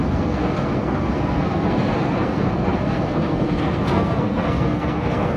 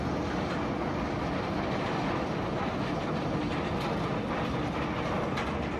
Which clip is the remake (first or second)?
first